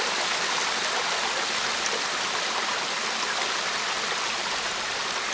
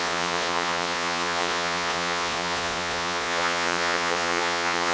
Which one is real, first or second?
first